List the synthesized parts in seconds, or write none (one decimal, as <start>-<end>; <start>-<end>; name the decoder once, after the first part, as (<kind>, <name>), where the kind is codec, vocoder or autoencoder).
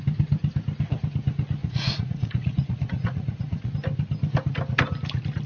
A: 1.6-3.7 (vocoder, Vocos)